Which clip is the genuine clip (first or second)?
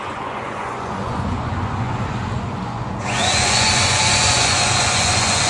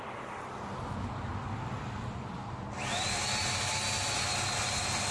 second